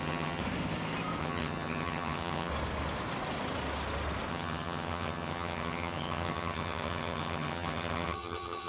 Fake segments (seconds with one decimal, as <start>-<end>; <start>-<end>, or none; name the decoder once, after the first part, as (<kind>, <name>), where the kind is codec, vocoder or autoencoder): 0.0-0.4 (vocoder, HiFi-GAN); 1.2-2.5; 4.3-8.7

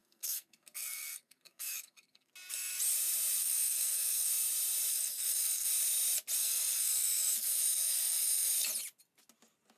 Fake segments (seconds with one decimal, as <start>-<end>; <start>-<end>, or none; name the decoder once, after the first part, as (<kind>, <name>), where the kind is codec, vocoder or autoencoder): 0.0-2.3 (codec, SNAC); 3.4-4.3; 4.9-5.7; 6.4-8.5

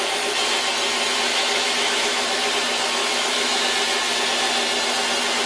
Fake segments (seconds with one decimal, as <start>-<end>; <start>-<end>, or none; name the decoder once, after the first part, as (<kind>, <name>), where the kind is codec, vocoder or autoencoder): 1.3-2.5 (autoencoder, DAC-VAE); 3.0-3.6

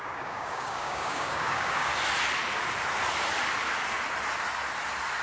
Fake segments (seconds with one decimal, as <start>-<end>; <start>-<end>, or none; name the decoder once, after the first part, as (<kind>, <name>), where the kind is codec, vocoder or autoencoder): 0.0-1.9 (codec, DAC)

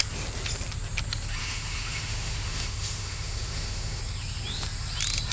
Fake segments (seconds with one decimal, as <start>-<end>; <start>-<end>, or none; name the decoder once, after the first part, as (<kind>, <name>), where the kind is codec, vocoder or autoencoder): 1.4-4.0 (autoencoder, DAC-VAE)